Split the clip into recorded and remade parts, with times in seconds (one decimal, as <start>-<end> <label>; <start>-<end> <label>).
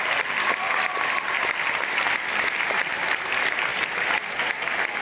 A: 0.0-5.0 recorded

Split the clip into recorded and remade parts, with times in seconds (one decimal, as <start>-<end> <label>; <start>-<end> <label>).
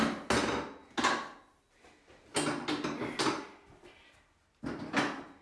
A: 0.0-5.4 recorded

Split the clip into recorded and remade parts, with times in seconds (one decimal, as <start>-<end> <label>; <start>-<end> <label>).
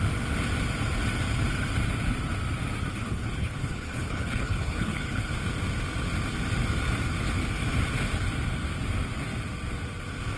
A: 0.0-2.9 recorded; 2.9-5.3 remade; 5.3-10.4 recorded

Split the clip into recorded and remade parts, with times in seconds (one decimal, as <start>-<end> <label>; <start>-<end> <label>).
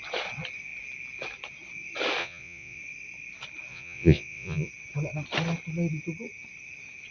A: 0.0-2.2 recorded; 2.2-2.8 remade; 2.8-3.7 recorded; 3.7-4.7 remade; 4.7-7.1 recorded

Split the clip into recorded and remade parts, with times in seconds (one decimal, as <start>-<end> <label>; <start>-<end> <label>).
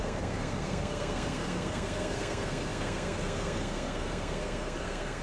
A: 0.0-5.2 remade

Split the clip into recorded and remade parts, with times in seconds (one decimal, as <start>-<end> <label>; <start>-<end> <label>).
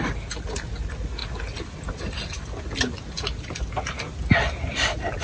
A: 0.0-5.2 recorded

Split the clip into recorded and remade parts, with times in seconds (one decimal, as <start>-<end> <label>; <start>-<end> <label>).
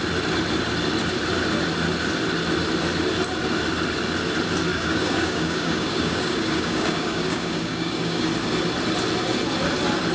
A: 0.0-4.7 recorded; 4.7-8.3 remade; 8.3-10.1 recorded